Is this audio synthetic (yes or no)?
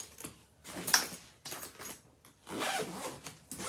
no